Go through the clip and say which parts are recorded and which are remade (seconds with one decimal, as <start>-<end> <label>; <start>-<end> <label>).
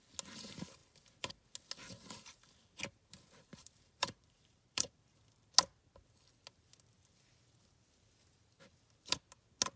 0.0-3.5 recorded; 3.5-5.2 remade; 5.2-9.8 recorded